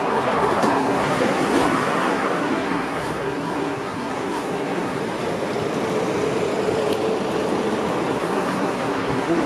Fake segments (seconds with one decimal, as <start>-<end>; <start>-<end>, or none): 0.0-5.0; 8.1-9.5